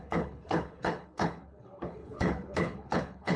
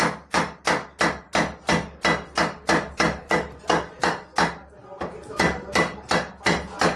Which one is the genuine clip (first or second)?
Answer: second